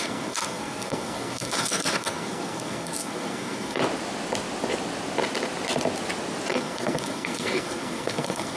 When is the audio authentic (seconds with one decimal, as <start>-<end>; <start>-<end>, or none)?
3.8-6.5

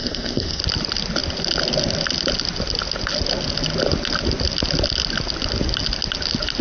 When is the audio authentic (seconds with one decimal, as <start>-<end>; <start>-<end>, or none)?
0.6-6.6

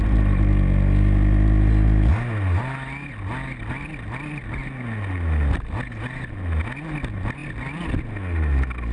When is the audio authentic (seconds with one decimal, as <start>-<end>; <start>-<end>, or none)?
0.0-8.9

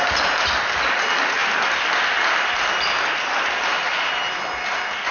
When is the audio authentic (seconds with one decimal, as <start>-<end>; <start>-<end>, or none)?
0.0-5.1

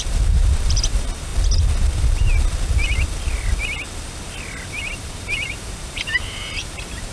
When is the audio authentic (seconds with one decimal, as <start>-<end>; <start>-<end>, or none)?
1.3-4.9

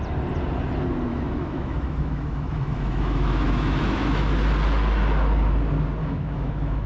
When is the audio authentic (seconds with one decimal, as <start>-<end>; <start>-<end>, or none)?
0.0-1.1; 4.3-6.0